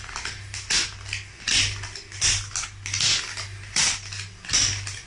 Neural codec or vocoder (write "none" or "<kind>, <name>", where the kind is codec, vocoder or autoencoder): none